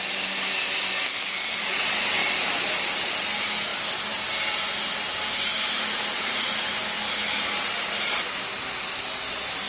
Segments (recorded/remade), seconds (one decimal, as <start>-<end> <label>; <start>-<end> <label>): 0.0-2.2 recorded; 2.2-2.9 remade; 2.9-9.7 recorded